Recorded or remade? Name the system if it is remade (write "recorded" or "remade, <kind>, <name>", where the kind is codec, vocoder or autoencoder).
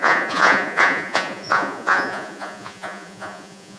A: remade, vocoder, Vocos